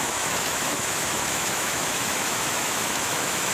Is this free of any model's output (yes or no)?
no